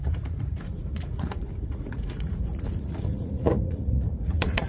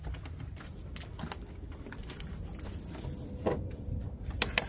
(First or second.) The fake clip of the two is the first